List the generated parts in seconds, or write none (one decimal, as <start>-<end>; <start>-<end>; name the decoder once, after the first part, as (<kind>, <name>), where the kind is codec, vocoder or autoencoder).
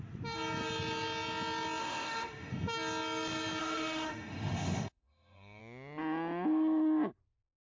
1.8-2.5 (autoencoder, DAC-VAE); 3.6-5.6